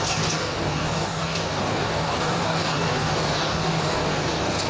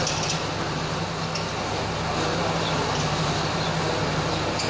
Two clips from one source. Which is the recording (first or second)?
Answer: second